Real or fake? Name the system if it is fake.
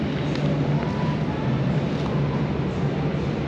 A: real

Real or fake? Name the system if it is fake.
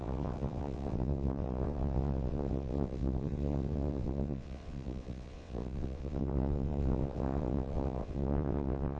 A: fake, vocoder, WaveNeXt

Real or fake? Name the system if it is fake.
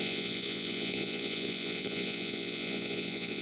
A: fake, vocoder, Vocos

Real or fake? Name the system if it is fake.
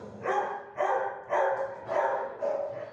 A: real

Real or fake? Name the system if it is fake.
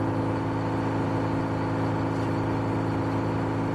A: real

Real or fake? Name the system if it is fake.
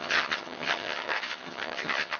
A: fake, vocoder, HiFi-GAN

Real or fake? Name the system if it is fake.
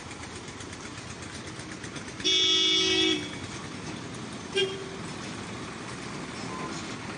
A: real